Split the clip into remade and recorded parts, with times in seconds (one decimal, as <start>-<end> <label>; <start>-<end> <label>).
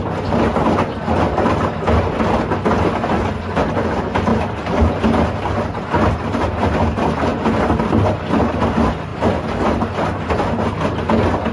0.0-4.3 recorded; 4.3-4.9 remade; 4.9-9.1 recorded; 9.1-9.8 remade; 9.8-11.5 recorded